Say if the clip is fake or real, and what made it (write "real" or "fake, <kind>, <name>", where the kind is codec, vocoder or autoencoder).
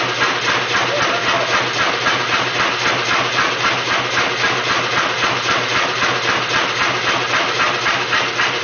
real